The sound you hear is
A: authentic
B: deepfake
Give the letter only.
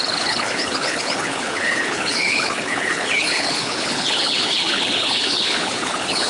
B